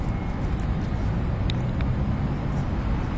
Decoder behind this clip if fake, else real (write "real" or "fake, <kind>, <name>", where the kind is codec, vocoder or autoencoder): real